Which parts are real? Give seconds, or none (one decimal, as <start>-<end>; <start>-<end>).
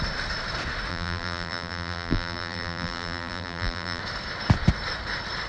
0.0-0.9; 4.0-5.5